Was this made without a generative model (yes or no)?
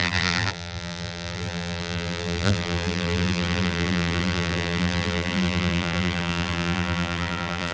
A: no